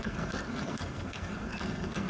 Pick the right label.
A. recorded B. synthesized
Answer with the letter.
B